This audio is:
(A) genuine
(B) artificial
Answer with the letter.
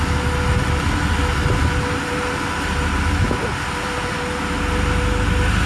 A